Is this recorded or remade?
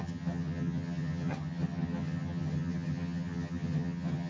remade